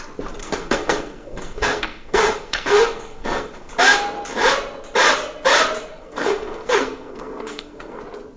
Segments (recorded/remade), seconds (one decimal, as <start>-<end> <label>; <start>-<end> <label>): 0.0-0.4 recorded; 0.4-3.7 remade; 3.7-5.9 recorded; 5.9-8.0 remade; 8.0-8.4 recorded